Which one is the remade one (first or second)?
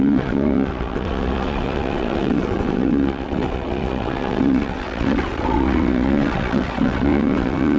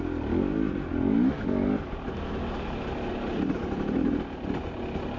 first